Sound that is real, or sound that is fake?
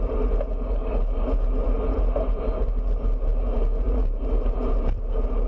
real